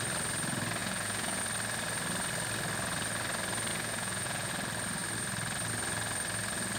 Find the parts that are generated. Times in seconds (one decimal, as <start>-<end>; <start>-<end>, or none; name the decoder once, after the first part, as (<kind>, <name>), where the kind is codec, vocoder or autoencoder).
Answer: 0.8-1.4 (vocoder, Vocos); 3.7-4.5